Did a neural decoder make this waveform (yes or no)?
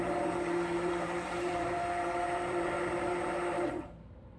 yes